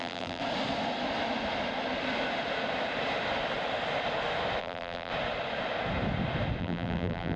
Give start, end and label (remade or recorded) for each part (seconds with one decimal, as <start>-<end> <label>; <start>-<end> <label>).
0.0-0.4 remade; 0.4-4.6 recorded; 4.6-5.1 remade; 5.1-6.6 recorded; 6.6-7.4 remade